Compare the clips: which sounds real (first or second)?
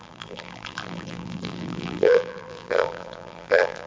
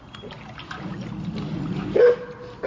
second